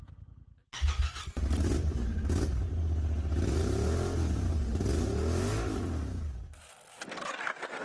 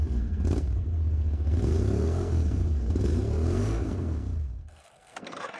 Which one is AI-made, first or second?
second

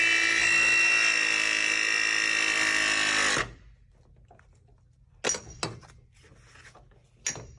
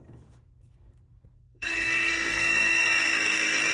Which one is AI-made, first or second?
second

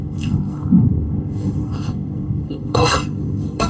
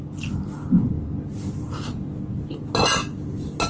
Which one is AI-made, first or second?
first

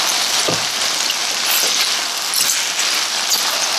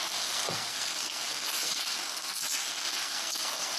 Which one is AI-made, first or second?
second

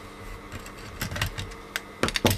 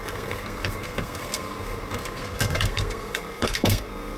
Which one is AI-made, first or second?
second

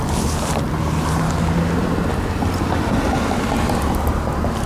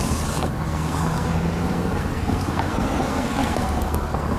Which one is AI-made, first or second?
second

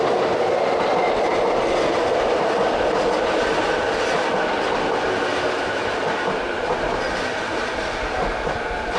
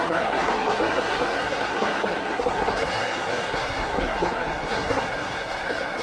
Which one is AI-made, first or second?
second